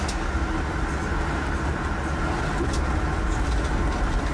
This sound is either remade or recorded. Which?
recorded